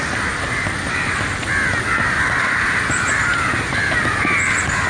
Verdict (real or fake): real